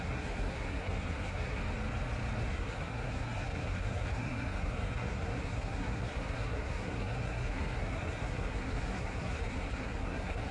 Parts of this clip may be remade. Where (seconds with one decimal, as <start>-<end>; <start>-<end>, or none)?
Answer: 0.0-1.6; 2.5-10.5